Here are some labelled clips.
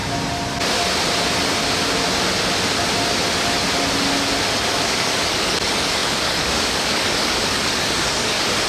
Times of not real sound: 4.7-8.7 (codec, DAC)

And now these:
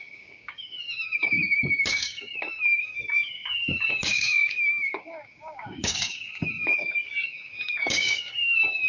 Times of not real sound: 0.0-8.9 (codec, DAC)

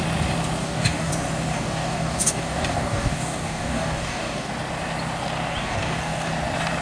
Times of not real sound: 0.6-1.1 (codec, DAC); 1.5-4.5; 5.6-6.3